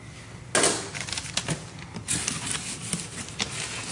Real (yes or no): yes